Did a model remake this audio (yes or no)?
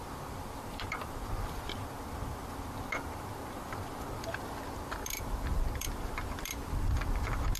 yes